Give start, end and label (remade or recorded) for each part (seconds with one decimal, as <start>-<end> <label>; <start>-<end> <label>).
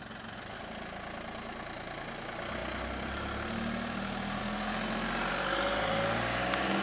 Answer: 0.0-6.8 recorded